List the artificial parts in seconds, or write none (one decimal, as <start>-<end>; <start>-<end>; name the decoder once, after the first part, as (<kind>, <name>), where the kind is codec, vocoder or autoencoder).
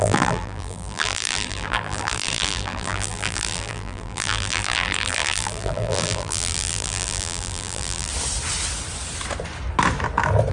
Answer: 0.0-8.1 (vocoder, BigVGAN v2)